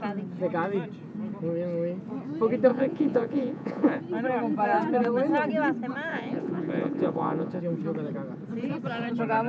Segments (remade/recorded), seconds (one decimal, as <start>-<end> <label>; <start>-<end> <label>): 0.0-2.7 recorded; 2.7-4.0 remade; 4.0-6.1 recorded; 6.1-7.6 remade; 7.6-9.5 recorded